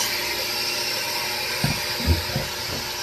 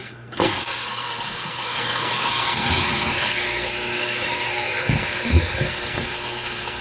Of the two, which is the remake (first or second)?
second